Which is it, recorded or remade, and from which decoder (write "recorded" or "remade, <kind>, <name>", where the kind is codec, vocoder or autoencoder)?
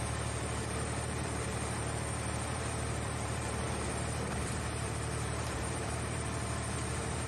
remade, vocoder, BigVGAN v2